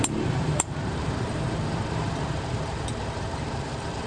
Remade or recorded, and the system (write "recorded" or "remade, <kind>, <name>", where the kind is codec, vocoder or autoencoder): remade, vocoder, BigVGAN v2